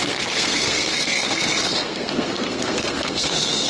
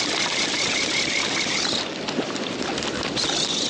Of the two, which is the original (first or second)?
second